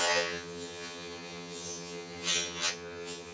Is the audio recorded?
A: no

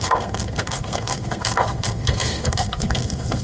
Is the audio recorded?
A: no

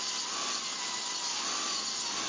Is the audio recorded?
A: yes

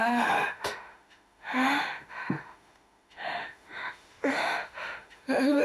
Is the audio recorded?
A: no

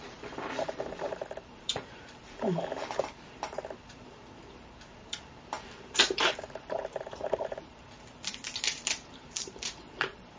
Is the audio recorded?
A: no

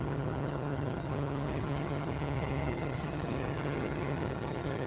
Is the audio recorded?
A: no